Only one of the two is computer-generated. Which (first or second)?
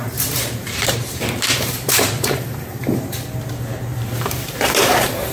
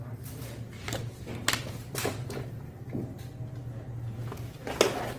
first